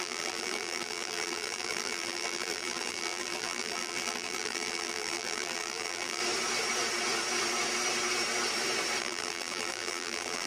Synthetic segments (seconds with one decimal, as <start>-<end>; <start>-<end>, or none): 0.0-6.2; 9.0-10.5